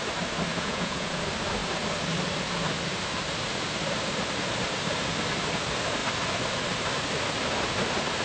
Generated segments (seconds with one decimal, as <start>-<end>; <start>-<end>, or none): 0.5-1.2